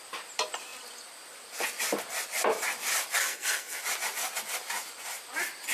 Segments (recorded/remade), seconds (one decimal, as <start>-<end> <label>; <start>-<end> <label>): 0.0-3.2 recorded; 3.2-3.8 remade; 3.8-5.7 recorded